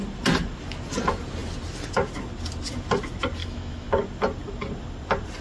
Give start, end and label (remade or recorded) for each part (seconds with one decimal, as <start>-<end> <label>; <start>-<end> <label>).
0.0-3.4 recorded; 3.4-3.9 remade; 3.9-5.4 recorded